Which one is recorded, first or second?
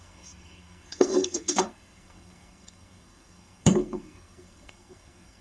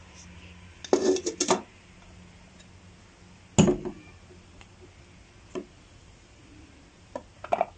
second